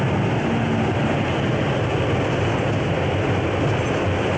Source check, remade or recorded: recorded